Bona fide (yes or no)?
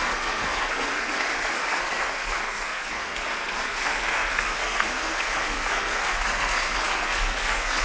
no